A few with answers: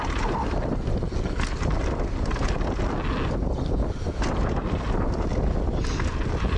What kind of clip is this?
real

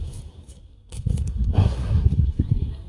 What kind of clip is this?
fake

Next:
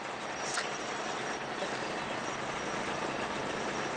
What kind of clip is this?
real